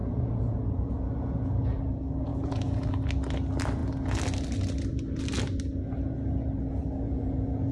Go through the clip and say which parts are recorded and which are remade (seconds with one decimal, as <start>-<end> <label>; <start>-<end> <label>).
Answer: 0.0-1.8 remade; 1.8-2.3 recorded; 2.3-2.9 remade; 2.9-6.8 recorded; 6.8-7.7 remade